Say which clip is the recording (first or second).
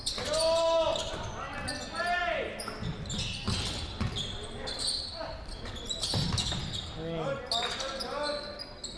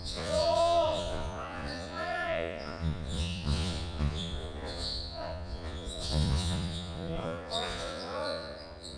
first